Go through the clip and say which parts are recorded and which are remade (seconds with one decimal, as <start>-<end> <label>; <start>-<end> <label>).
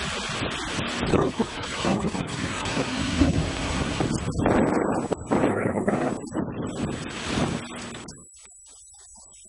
0.0-1.1 recorded; 1.1-4.0 remade; 4.0-5.5 recorded; 5.5-6.1 remade; 6.1-9.5 recorded